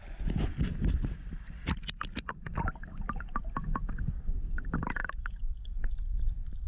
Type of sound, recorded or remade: recorded